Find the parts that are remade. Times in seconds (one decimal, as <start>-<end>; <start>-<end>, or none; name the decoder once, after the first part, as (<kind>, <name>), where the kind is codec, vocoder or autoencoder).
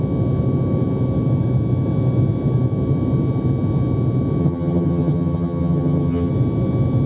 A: 4.4-6.3 (vocoder, HiFi-GAN)